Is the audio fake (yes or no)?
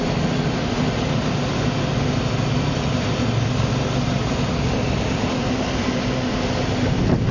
no